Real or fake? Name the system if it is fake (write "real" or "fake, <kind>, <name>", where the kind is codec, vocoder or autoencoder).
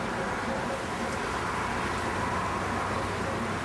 real